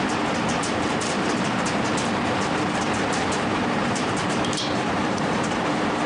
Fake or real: fake